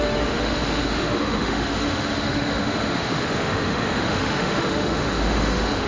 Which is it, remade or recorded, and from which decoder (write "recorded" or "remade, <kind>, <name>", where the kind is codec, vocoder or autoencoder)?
remade, autoencoder, DAC-VAE